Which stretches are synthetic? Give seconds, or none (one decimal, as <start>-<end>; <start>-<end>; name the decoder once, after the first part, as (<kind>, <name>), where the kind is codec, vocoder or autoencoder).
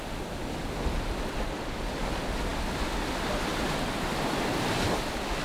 none